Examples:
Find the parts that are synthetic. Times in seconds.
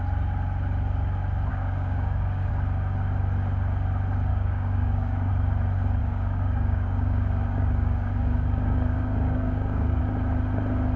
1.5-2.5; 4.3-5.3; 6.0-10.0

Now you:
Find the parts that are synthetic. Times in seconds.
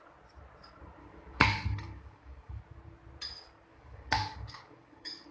1.0-2.6; 3.7-5.3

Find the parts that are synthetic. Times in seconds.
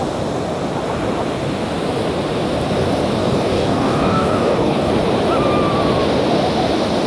3.2-4.9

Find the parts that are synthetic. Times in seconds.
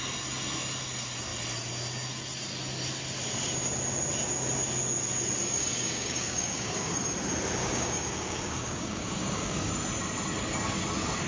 5.4-7.0; 7.6-9.7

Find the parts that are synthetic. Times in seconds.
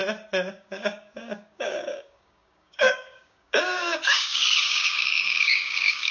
0.5-6.1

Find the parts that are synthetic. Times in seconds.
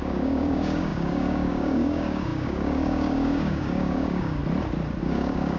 0.0-4.4; 5.0-5.6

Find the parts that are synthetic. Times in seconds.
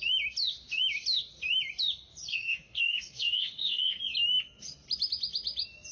2.3-4.0